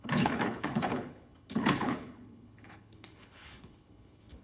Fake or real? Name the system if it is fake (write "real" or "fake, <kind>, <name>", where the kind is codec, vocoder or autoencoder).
fake, codec, HILCodec